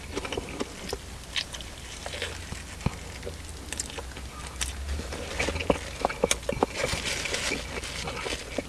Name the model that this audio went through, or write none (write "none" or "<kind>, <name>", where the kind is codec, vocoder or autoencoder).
none